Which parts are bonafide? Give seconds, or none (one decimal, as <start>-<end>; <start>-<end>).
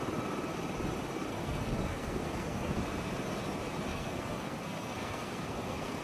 0.0-1.3; 2.8-3.9